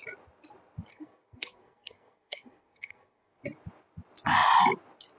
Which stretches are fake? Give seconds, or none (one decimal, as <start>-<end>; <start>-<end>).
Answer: 0.9-3.4